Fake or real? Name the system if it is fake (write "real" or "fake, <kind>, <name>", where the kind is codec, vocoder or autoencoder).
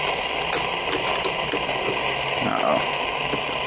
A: real